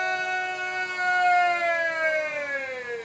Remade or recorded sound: recorded